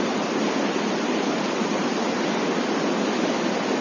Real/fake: real